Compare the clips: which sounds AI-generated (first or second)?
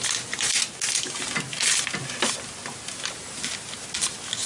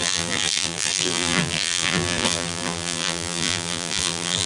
second